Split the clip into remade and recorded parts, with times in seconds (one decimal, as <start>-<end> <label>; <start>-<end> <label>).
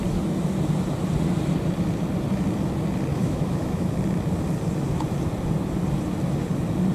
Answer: 0.0-3.1 recorded; 3.1-3.9 remade; 3.9-6.9 recorded